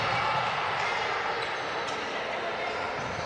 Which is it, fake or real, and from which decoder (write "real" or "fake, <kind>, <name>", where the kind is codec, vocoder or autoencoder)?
real